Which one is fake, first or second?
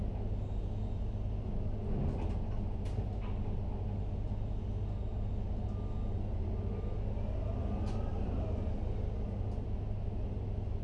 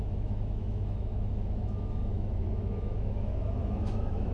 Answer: second